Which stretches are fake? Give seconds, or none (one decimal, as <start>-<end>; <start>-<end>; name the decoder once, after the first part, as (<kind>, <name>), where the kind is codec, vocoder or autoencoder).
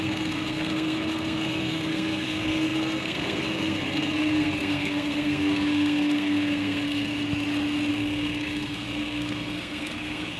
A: 0.0-7.1 (codec, SNAC); 7.9-10.4